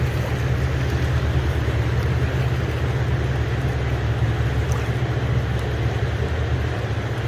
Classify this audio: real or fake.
real